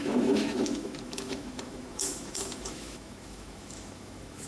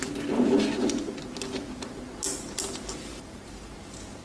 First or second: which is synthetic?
first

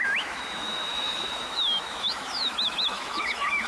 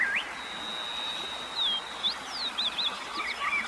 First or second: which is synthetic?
first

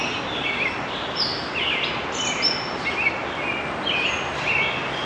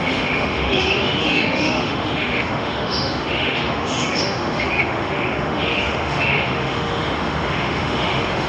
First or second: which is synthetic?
second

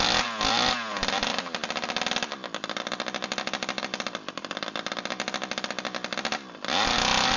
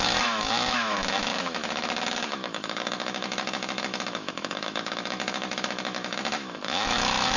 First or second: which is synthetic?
second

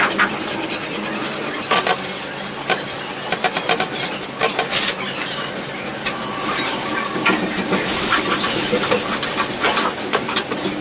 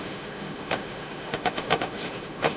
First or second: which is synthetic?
second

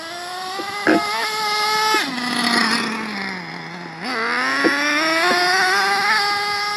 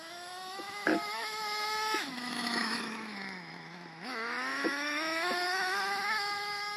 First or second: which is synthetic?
second